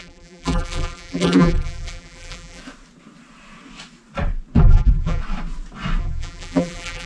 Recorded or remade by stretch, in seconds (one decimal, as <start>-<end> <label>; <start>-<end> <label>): 0.0-2.6 remade; 2.6-4.6 recorded; 4.6-5.2 remade; 5.2-6.0 recorded; 6.0-7.1 remade